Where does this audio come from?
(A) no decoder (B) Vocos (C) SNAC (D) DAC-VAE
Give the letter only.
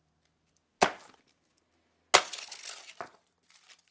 A